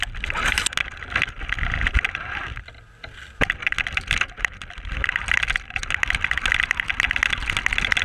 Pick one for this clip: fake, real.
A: real